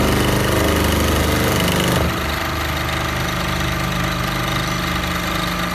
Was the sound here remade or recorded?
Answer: recorded